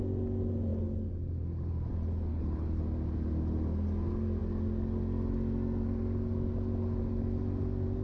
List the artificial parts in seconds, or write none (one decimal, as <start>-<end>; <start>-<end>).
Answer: 2.3-2.8